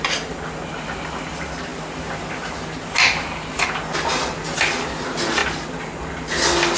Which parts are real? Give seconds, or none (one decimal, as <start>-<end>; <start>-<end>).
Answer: 0.0-6.8